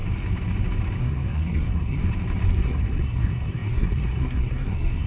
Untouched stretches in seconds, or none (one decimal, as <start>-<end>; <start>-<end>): 0.0-1.0; 2.0-2.6